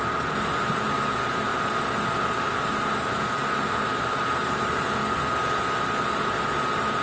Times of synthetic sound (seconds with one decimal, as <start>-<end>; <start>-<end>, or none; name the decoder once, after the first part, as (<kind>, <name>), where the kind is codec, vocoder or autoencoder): 0.0-5.0 (vocoder, BigVGAN v2); 6.0-7.0